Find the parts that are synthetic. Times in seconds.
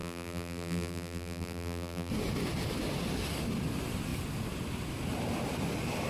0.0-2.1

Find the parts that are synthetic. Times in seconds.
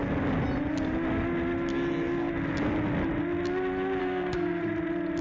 4.0-4.6